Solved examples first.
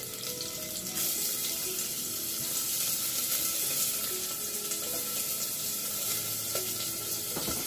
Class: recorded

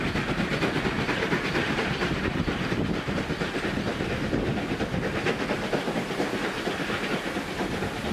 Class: recorded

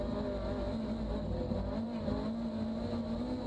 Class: recorded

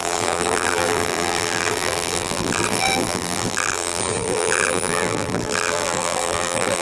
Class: remade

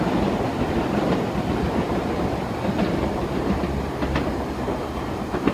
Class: remade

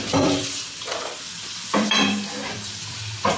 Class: remade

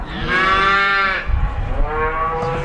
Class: remade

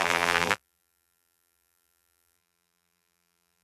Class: remade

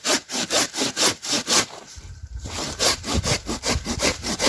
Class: remade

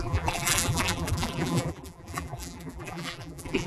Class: remade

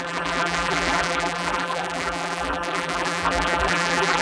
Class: remade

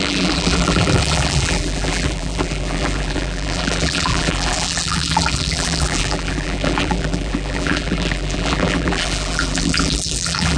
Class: remade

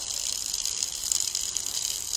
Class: remade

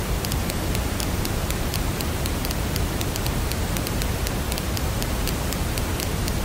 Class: remade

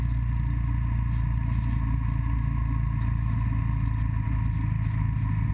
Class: recorded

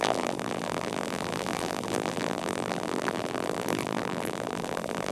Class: remade